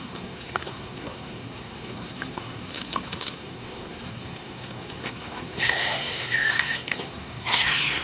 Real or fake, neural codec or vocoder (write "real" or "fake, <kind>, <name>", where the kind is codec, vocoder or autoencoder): fake, codec, SNAC